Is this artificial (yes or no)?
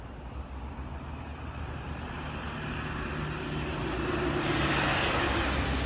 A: no